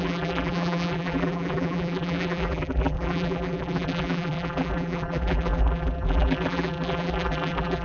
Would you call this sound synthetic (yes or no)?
yes